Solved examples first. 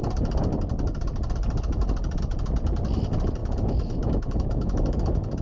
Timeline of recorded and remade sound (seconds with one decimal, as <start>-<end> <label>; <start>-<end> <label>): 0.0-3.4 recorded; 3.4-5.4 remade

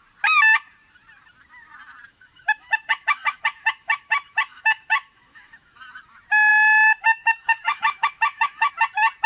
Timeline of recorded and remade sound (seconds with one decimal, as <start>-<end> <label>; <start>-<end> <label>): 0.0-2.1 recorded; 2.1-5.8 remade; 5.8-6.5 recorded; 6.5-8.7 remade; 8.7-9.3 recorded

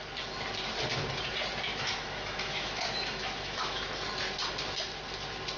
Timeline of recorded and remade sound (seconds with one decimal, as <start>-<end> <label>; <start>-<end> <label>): 0.0-1.7 recorded; 1.7-3.9 remade; 3.9-5.6 recorded

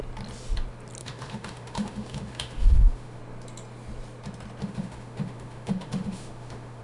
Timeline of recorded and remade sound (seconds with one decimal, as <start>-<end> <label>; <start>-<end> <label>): 0.0-1.0 recorded; 1.0-3.2 remade; 3.2-4.6 recorded; 4.6-6.8 remade

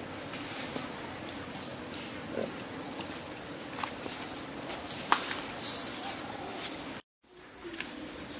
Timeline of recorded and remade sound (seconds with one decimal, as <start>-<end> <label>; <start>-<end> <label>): 0.0-8.4 recorded

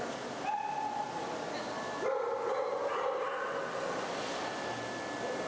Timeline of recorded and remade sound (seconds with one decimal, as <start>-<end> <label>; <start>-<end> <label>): 0.0-5.5 recorded

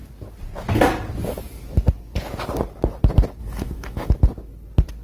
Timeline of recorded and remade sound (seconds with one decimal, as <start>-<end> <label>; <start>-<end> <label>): 0.0-3.4 recorded; 3.4-4.1 remade; 4.1-5.0 recorded